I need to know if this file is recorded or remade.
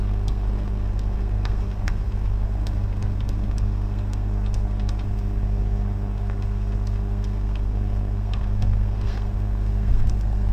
remade